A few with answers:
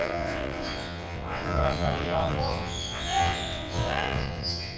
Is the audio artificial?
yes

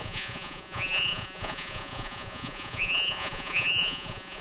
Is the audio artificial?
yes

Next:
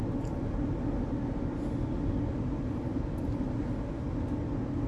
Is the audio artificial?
no